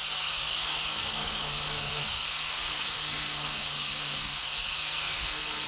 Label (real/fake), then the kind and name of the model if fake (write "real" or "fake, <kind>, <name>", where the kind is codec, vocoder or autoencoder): fake, codec, SNAC